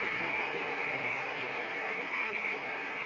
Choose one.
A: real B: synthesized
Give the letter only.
B